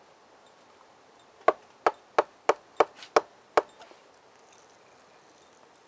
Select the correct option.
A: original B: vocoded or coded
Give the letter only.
A